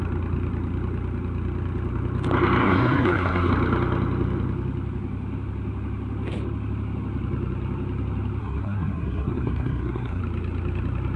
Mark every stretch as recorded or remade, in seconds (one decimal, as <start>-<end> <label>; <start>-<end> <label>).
0.0-2.6 recorded; 2.6-3.5 remade; 3.5-8.4 recorded; 8.4-10.2 remade; 10.2-11.2 recorded

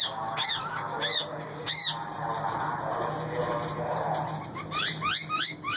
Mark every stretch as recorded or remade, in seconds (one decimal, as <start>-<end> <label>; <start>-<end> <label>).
0.0-1.8 remade; 1.8-5.3 recorded; 5.3-5.8 remade